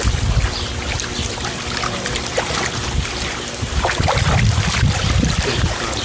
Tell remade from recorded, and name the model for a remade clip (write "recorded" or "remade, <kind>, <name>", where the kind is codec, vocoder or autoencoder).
recorded